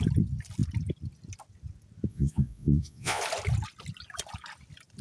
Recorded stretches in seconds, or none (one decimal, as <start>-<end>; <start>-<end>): 0.0-2.1; 3.2-5.0